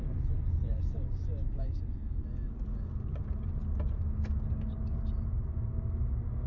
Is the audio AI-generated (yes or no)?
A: no